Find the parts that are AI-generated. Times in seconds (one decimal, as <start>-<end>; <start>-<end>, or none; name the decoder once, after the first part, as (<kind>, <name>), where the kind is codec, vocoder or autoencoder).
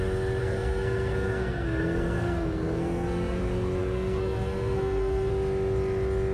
0.4-3.4 (codec, SNAC); 3.8-5.3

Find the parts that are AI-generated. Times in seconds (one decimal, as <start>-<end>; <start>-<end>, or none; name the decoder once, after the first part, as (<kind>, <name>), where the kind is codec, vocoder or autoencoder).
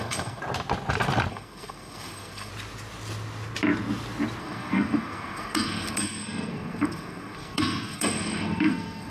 0.0-0.4 (codec, SNAC); 1.3-2.5; 4.4-9.1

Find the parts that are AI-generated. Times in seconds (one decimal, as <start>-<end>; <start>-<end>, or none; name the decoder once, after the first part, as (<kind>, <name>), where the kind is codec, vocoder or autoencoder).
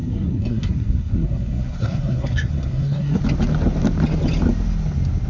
0.0-3.2 (codec, SNAC)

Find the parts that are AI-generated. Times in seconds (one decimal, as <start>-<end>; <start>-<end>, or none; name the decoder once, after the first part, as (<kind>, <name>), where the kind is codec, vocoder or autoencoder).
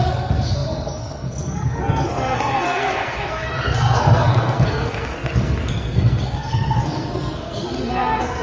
0.0-8.4 (codec, SNAC)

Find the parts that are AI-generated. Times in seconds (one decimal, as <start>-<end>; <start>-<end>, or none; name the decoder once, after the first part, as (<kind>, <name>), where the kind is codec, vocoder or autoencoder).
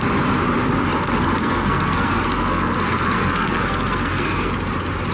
1.4-4.5 (codec, SNAC)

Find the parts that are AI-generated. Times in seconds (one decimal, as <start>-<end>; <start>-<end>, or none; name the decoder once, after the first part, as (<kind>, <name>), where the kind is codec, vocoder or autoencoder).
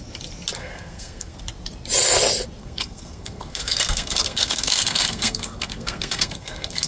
0.6-1.4 (codec, SNAC); 2.6-6.9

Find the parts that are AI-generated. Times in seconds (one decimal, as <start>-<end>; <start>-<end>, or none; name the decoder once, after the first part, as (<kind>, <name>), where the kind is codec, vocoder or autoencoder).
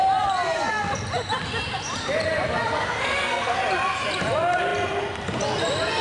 2.7-3.6 (codec, SNAC)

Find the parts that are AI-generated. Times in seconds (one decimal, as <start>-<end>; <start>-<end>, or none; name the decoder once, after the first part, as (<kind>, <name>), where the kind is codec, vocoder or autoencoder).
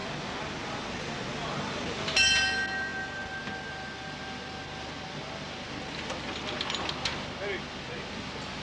none